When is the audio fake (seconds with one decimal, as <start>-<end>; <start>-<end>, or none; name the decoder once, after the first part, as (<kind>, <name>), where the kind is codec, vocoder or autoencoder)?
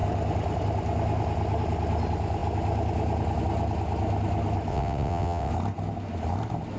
4.7-5.5 (vocoder, WaveNeXt)